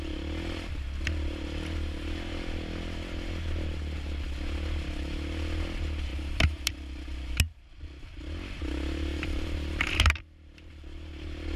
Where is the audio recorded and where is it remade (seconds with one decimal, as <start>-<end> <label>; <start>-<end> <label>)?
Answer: 0.0-6.1 recorded; 6.1-6.7 remade; 6.7-9.1 recorded; 9.1-10.7 remade; 10.7-11.6 recorded